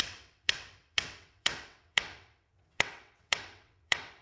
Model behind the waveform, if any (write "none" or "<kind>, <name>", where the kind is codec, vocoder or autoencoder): vocoder, WaveNeXt